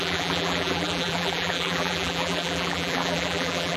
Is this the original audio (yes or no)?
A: no